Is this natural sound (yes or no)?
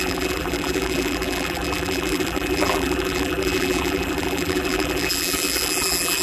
no